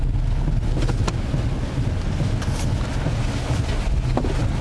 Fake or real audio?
real